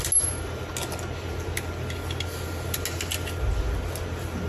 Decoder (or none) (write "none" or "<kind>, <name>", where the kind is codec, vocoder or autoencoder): none